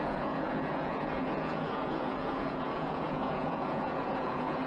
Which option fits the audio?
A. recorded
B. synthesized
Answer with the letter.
B